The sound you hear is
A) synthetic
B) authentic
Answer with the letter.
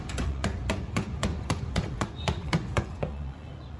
A